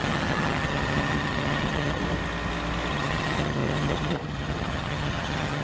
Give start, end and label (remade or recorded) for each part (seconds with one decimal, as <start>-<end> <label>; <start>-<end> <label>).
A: 0.0-2.0 remade; 2.0-2.9 recorded; 2.9-5.6 remade